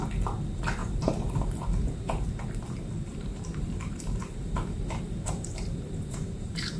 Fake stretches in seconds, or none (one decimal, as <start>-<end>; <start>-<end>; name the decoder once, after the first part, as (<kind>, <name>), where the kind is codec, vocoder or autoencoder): 0.8-2.4 (vocoder, BigVGAN v2); 3.1-6.8